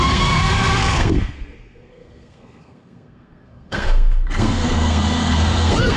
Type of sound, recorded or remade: remade